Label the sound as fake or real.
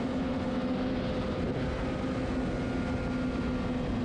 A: real